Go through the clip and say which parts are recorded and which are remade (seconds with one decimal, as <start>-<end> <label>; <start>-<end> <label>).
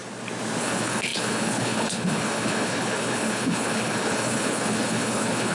0.0-0.6 recorded; 0.6-5.5 remade